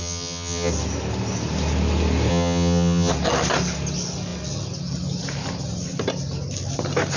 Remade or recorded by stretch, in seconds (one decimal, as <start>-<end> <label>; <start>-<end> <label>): 0.0-0.7 remade; 0.7-2.3 recorded; 2.3-3.1 remade; 3.1-7.2 recorded